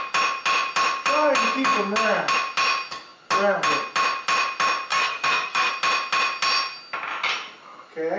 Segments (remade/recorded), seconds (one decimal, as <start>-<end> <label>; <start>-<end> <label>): 0.0-4.9 recorded; 4.9-5.7 remade; 5.7-8.2 recorded